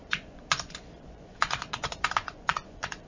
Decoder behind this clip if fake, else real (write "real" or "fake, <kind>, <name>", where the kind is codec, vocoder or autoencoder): fake, vocoder, Vocos